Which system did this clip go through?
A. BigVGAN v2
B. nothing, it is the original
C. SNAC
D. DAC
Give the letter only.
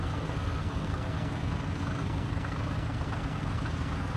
C